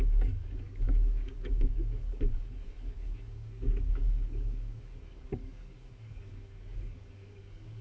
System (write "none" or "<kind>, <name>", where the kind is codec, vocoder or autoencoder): codec, DAC